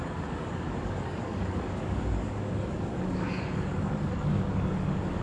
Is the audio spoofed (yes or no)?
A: yes